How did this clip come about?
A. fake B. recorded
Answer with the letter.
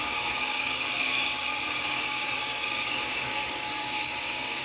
A